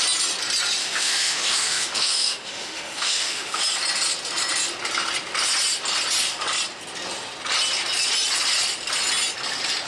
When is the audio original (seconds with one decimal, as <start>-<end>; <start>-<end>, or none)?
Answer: 0.0-0.8; 3.6-9.9